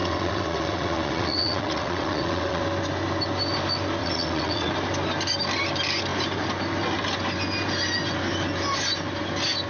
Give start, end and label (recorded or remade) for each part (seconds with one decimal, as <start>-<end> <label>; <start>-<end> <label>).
0.0-2.6 remade; 2.6-4.0 recorded; 4.0-4.7 remade; 4.7-9.7 recorded